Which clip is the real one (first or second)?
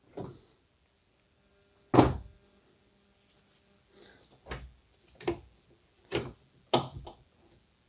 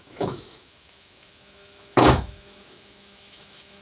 first